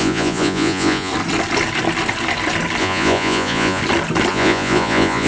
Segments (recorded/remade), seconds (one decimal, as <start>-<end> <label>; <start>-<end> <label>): 0.0-1.1 remade; 1.1-2.8 recorded; 2.8-3.8 remade; 3.8-4.3 recorded; 4.3-5.3 remade